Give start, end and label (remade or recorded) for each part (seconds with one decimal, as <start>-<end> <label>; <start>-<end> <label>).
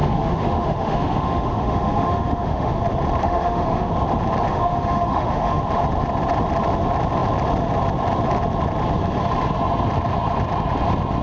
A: 0.0-2.8 remade; 2.8-3.2 recorded; 3.2-3.9 remade; 3.9-4.5 recorded; 4.5-5.6 remade; 5.6-11.2 recorded